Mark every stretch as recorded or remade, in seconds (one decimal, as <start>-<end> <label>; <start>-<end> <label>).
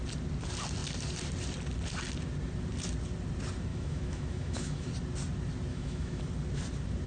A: 0.0-3.7 recorded; 3.7-4.9 remade; 4.9-5.7 recorded; 5.7-6.2 remade; 6.2-7.1 recorded